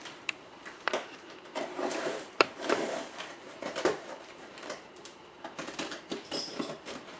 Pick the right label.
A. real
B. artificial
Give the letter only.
B